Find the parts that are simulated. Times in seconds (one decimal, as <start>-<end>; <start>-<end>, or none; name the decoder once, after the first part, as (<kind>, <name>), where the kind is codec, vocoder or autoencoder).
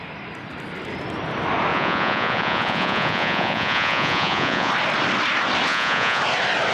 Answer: 1.7-4.7 (vocoder, Vocos); 5.7-6.2